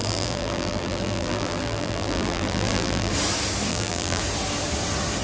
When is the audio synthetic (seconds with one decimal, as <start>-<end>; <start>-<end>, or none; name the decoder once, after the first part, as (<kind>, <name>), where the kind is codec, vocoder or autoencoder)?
0.0-3.1 (vocoder, BigVGAN v2); 3.7-4.2